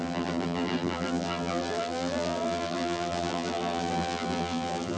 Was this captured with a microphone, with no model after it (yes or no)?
no